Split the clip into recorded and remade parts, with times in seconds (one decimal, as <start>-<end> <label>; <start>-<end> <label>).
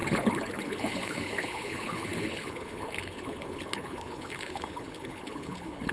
0.0-5.9 remade